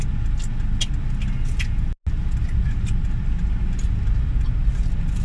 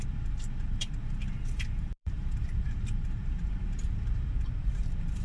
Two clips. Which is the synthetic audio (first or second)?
second